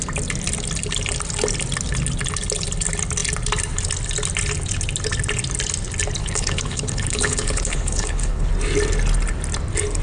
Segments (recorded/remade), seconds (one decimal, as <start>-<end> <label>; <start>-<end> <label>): 0.0-6.2 recorded; 6.2-8.5 remade; 8.5-10.0 recorded